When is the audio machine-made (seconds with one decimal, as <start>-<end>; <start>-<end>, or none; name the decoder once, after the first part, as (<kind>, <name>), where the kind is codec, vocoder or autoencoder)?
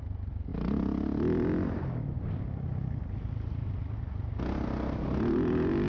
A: none